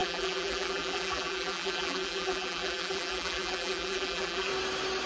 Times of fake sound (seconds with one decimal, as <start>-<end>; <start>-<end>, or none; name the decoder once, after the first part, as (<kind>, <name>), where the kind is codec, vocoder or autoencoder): 0.0-4.5 (vocoder, BigVGAN v2)